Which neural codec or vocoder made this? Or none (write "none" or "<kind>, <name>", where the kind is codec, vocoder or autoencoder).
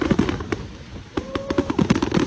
vocoder, BigVGAN v2